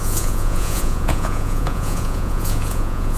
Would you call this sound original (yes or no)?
no